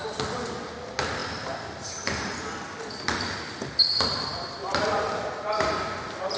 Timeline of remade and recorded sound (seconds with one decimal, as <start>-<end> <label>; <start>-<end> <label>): 0.0-6.4 recorded